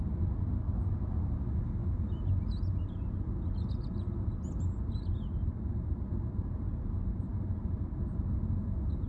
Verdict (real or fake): real